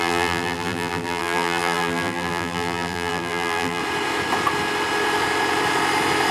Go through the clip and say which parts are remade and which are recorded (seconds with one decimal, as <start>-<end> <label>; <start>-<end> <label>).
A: 0.0-3.8 remade; 3.8-6.3 recorded